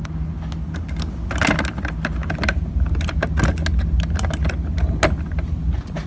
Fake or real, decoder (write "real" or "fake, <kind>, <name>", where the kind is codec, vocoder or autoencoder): real